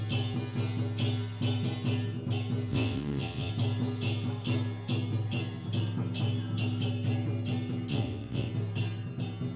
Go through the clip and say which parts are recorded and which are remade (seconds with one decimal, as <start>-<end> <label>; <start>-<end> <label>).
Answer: 0.0-2.7 recorded; 2.7-3.5 remade; 3.5-7.9 recorded; 7.9-8.5 remade; 8.5-9.6 recorded